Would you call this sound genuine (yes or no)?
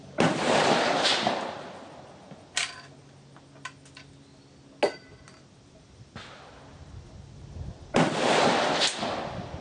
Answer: yes